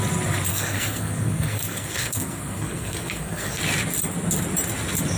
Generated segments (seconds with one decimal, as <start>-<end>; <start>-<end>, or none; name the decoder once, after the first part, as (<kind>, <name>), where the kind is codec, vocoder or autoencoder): 0.5-3.6 (codec, SNAC)